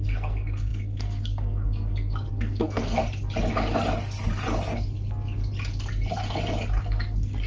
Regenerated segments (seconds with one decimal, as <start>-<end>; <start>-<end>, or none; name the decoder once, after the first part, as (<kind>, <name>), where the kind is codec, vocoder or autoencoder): 0.0-3.0 (codec, SNAC); 6.8-7.5